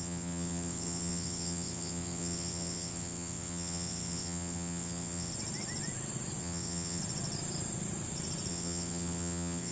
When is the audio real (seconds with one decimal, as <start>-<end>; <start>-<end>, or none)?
5.3-6.4; 7.0-8.5